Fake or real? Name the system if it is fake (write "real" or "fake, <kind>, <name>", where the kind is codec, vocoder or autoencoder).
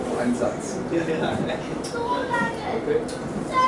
real